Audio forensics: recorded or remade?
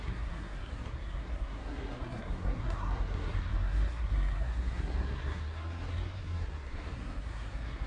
remade